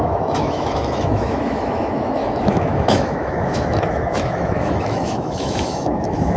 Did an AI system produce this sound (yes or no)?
yes